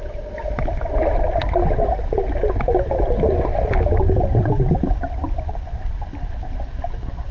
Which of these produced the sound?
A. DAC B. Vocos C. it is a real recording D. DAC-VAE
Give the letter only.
C